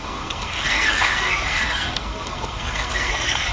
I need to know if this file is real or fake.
fake